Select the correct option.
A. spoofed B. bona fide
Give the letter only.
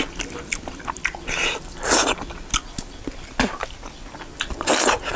B